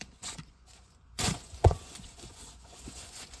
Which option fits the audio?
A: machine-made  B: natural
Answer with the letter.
A